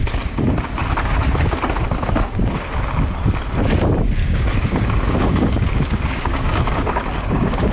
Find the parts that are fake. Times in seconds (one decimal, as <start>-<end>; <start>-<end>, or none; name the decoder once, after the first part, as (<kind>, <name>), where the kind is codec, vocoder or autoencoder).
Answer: 4.2-7.7 (codec, DAC)